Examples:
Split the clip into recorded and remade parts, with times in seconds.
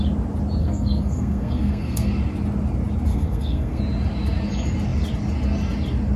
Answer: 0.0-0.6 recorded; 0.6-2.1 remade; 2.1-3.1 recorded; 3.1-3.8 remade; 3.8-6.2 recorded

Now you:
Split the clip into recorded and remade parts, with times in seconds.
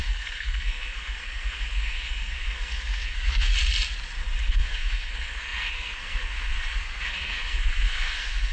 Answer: 0.0-3.5 remade; 3.5-4.5 recorded; 4.5-8.5 remade